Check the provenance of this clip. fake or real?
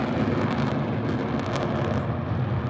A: real